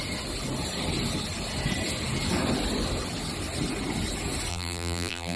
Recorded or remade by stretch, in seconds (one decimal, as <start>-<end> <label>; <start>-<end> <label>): 0.0-4.5 recorded; 4.5-5.4 remade